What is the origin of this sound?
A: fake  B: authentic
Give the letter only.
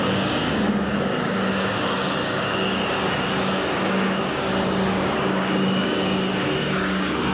A